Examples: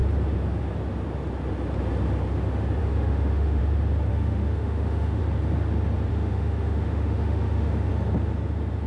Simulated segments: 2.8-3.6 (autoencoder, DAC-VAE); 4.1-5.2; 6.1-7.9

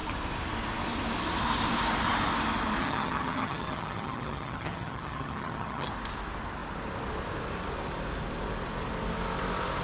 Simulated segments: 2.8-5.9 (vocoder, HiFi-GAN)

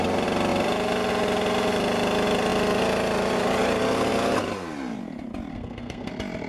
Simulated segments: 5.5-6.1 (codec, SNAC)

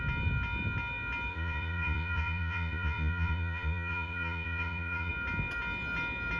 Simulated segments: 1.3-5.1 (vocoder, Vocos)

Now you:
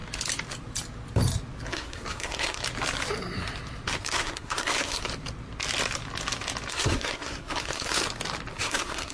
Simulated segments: 1.7-2.6 (codec, SNAC); 4.0-5.0; 6.7-8.0; 8.6-9.1

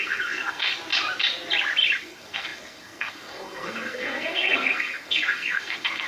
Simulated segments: 0.0-0.7 (codec, SNAC); 2.0-6.1

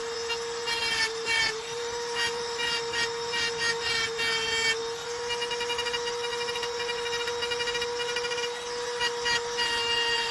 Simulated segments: 0.8-3.6 (vocoder, BigVGAN v2)